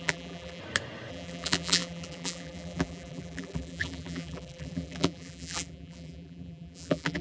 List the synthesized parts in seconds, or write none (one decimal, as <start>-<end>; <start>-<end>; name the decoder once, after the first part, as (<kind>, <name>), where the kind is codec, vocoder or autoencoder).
0.0-0.6 (vocoder, BigVGAN v2); 1.1-7.2